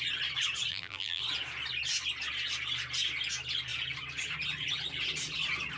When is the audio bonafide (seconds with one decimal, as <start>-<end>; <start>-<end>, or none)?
0.0-0.7; 1.2-5.8